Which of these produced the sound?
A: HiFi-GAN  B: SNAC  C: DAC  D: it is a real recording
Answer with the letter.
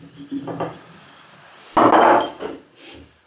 D